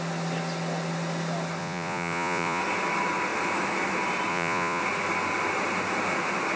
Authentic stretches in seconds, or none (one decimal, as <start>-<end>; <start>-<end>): 0.0-1.6; 2.6-4.3; 4.8-6.6